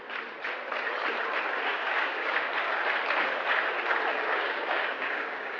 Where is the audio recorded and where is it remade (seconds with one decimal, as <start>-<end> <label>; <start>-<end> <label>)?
0.0-1.7 recorded; 1.7-2.5 remade; 2.5-4.1 recorded; 4.1-5.6 remade